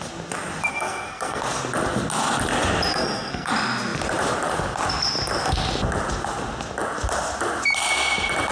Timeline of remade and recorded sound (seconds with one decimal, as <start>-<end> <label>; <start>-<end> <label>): 0.0-0.7 recorded; 0.7-1.4 remade; 1.4-2.9 recorded; 2.9-3.5 remade; 3.5-8.5 recorded